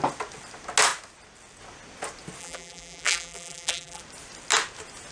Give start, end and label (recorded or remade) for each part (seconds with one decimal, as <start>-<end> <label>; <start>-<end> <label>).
0.0-2.4 recorded; 2.4-4.0 remade; 4.0-5.1 recorded